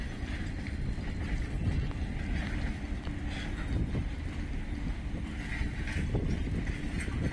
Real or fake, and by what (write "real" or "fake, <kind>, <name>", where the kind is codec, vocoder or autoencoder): real